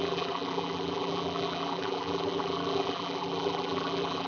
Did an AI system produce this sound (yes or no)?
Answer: yes